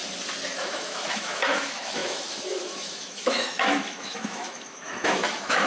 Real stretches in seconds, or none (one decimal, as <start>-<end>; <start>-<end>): 0.0-0.6